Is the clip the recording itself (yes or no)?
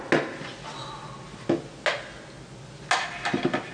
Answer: yes